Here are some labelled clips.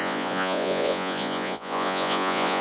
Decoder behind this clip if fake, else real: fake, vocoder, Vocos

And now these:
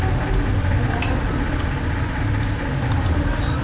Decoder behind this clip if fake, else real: real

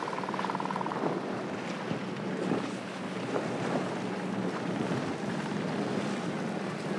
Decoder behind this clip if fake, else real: real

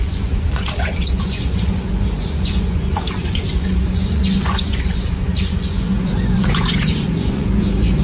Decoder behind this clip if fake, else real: fake, vocoder, Vocos